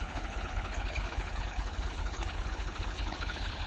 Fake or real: fake